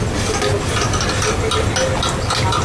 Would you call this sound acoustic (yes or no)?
yes